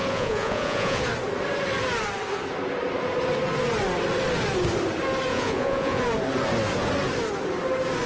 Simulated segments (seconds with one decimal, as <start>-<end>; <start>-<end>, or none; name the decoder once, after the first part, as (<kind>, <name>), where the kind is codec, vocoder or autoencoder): 0.0-1.0 (vocoder, Vocos); 5.3-6.0